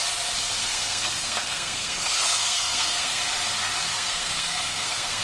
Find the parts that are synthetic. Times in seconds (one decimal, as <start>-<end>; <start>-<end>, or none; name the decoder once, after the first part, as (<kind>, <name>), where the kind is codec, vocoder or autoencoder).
0.6-3.2 (codec, SNAC); 3.9-5.2